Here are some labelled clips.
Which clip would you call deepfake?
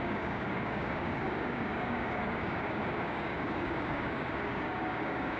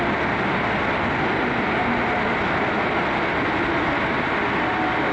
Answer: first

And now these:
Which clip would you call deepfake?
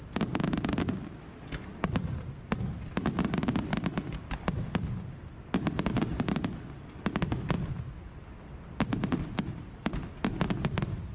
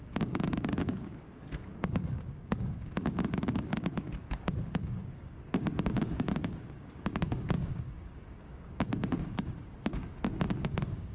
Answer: second